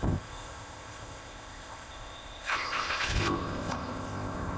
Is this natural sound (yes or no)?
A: no